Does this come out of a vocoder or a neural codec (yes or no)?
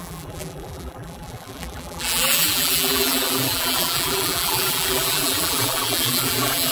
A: yes